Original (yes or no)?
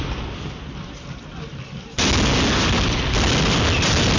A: yes